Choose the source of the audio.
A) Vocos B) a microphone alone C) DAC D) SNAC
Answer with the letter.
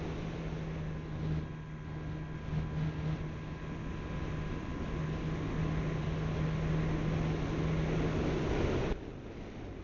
B